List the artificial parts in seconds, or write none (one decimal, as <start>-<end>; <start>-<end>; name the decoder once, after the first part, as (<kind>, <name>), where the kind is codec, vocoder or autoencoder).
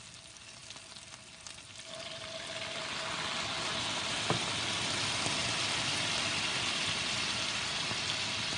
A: none